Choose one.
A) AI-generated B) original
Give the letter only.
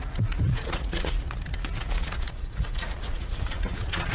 A